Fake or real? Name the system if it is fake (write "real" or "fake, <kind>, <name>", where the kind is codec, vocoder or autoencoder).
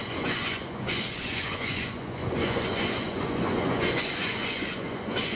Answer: fake, vocoder, Vocos